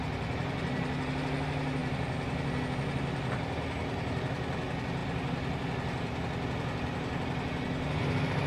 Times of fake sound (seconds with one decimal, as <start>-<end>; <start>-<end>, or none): none